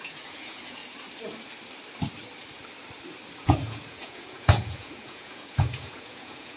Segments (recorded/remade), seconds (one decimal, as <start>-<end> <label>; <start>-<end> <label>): 0.0-0.8 remade; 0.8-3.4 recorded; 3.4-6.6 remade